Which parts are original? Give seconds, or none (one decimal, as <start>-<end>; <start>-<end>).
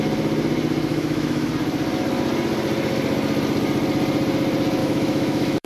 0.0-0.9; 1.5-4.8